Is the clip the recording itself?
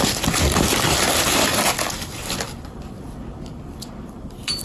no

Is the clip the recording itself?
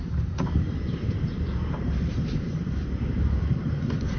no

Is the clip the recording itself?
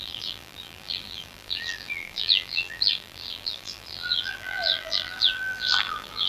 no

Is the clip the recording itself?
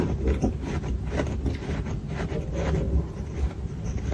yes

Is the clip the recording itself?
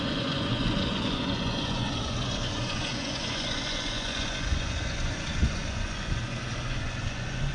no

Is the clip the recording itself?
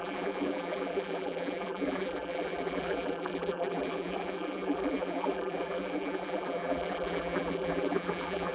no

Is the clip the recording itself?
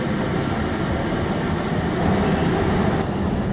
yes